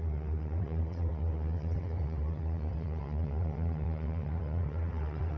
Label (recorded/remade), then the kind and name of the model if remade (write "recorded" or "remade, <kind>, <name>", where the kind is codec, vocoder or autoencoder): remade, vocoder, WaveNeXt